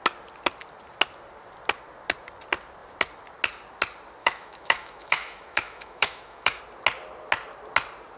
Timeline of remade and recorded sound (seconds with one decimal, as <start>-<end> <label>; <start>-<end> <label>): 0.0-4.2 recorded; 4.2-6.6 remade; 6.6-8.2 recorded

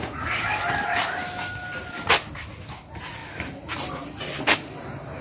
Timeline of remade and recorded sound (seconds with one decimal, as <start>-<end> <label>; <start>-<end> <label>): 0.0-5.2 recorded

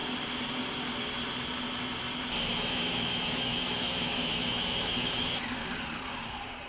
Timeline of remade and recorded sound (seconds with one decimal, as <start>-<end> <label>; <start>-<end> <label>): 0.0-2.5 recorded; 2.5-5.4 remade; 5.4-6.7 recorded

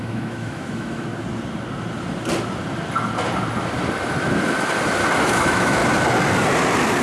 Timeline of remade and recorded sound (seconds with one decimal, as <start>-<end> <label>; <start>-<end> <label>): 0.0-1.1 remade; 1.1-5.3 recorded; 5.3-5.8 remade; 5.8-7.0 recorded

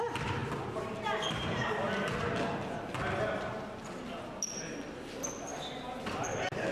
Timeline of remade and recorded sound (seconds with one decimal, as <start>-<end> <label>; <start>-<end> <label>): 0.0-6.7 recorded

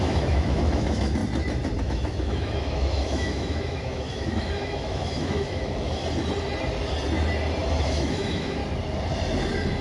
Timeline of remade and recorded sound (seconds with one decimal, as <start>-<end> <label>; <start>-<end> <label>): 0.0-1.2 remade; 1.2-1.8 recorded; 1.8-6.0 remade; 6.0-7.8 recorded; 7.8-8.6 remade; 8.6-9.8 recorded

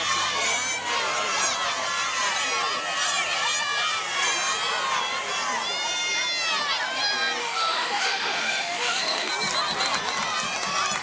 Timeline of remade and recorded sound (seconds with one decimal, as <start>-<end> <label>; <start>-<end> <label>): 0.0-7.4 recorded; 7.4-9.3 remade; 9.3-11.0 recorded